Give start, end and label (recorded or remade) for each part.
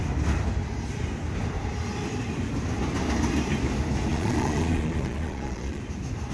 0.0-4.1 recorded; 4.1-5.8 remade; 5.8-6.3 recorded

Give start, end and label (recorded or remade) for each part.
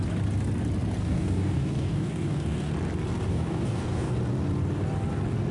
0.0-1.0 recorded; 1.0-2.7 remade; 2.7-3.3 recorded; 3.3-4.1 remade; 4.1-5.5 recorded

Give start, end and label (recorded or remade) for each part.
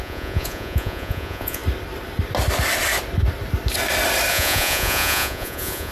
0.0-1.6 remade; 1.6-4.3 recorded; 4.3-5.9 remade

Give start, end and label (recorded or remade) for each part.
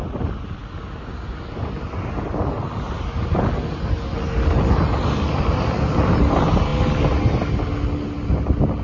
0.0-8.8 recorded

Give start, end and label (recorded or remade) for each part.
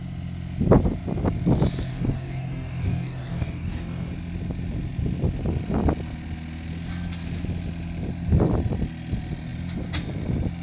0.0-1.9 recorded; 1.9-4.1 remade; 4.1-10.6 recorded